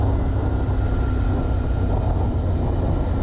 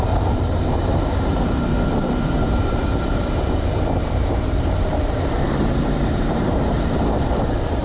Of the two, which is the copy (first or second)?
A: second